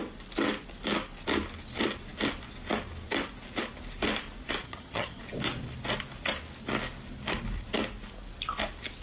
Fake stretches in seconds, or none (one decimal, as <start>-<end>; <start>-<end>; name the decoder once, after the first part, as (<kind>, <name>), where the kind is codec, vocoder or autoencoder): 4.6-5.2 (vocoder, HiFi-GAN)